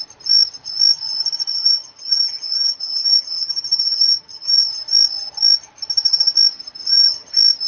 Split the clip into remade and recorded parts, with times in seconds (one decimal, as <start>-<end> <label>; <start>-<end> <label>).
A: 0.0-1.5 recorded; 1.5-4.7 remade; 4.7-6.8 recorded; 6.8-7.3 remade; 7.3-7.7 recorded

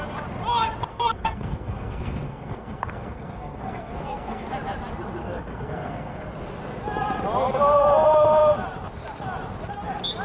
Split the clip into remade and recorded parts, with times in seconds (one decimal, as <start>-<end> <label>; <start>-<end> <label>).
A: 0.0-0.9 recorded; 0.9-4.5 remade; 4.5-5.2 recorded; 5.2-6.2 remade; 6.2-10.2 recorded

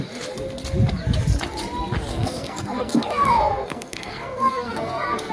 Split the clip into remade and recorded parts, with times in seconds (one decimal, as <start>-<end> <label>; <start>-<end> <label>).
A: 0.0-2.1 recorded; 2.1-5.3 remade

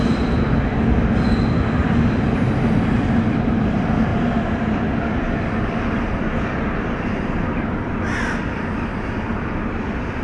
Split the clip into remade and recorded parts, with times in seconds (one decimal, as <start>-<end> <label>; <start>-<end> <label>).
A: 0.0-10.2 recorded

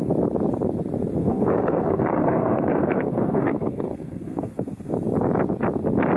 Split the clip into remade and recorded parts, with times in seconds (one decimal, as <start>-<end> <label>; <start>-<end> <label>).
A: 0.0-1.2 recorded; 1.2-4.9 remade; 4.9-6.2 recorded

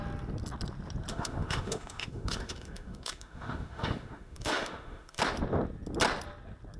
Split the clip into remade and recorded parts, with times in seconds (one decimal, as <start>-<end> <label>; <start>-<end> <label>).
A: 0.0-1.1 recorded; 1.1-5.2 remade; 5.2-6.8 recorded

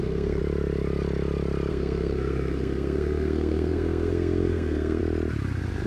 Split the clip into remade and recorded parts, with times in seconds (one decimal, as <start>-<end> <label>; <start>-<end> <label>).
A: 0.0-0.4 remade; 0.4-1.7 recorded; 1.7-5.0 remade; 5.0-5.9 recorded

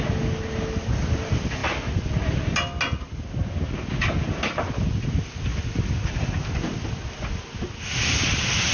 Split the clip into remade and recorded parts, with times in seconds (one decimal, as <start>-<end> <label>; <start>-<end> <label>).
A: 0.0-8.7 recorded